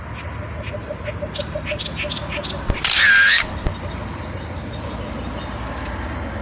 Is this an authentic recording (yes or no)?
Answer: yes